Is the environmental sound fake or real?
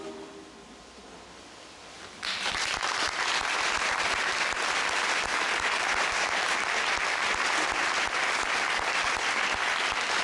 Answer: real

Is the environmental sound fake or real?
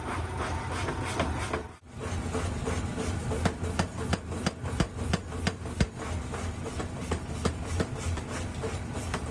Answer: real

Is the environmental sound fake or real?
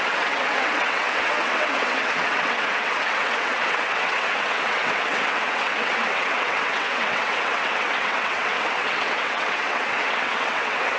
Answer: fake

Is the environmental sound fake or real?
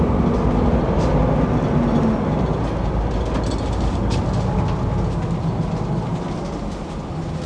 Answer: real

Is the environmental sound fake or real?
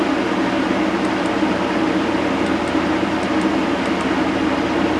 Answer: real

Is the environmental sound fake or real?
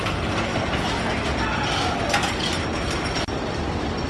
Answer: real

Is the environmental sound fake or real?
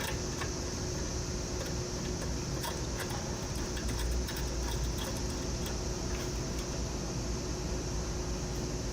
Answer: real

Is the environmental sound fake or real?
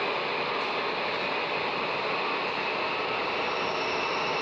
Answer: real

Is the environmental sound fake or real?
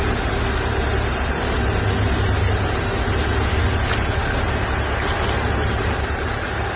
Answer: real